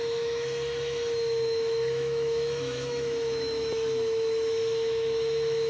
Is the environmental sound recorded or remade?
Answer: remade